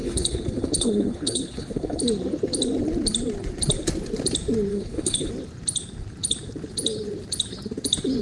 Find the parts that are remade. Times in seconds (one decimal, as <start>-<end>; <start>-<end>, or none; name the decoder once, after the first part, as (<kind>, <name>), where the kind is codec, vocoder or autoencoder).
0.0-2.0 (codec, HILCodec); 4.7-5.3